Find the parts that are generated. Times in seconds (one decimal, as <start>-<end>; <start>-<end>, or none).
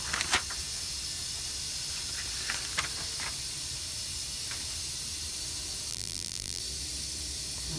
5.9-6.6